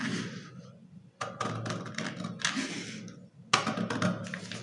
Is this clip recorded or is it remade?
recorded